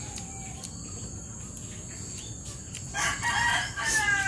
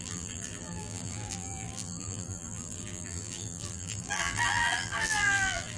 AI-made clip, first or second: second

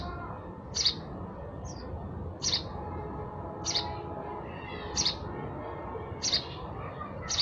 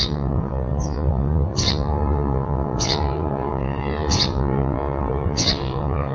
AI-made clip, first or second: second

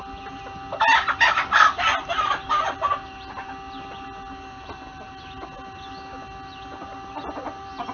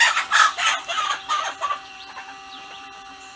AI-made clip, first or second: second